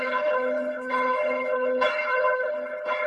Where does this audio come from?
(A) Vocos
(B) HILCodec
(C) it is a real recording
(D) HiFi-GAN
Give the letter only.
B